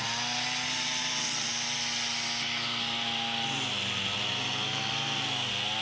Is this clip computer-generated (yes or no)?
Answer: no